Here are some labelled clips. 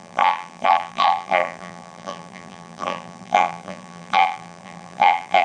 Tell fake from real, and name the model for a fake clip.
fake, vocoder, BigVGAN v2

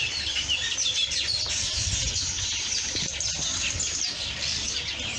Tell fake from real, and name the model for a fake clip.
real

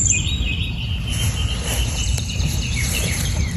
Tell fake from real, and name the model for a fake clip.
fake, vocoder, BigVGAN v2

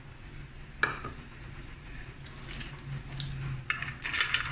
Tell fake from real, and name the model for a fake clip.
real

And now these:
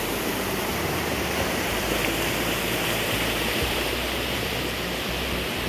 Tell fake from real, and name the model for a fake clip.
fake, vocoder, BigVGAN v2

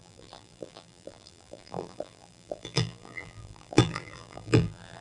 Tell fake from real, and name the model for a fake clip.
fake, vocoder, BigVGAN v2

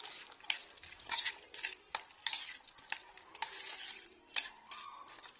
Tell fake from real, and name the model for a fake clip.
real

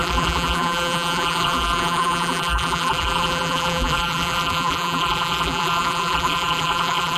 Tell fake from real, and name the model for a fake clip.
fake, vocoder, BigVGAN v2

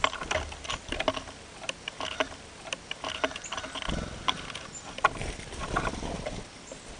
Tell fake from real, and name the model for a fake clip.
real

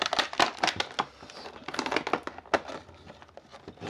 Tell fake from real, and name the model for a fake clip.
real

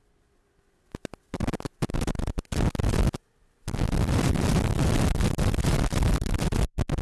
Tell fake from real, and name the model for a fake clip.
real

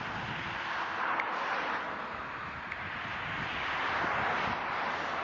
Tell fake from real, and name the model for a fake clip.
real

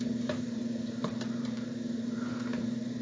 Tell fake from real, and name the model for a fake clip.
fake, vocoder, BigVGAN v2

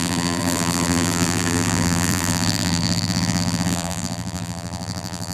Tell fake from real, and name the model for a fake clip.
fake, vocoder, BigVGAN v2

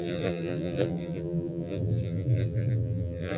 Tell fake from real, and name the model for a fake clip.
fake, vocoder, BigVGAN v2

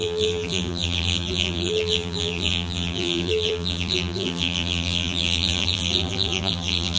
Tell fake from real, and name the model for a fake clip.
fake, vocoder, BigVGAN v2